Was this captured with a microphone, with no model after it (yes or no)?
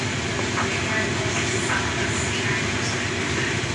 yes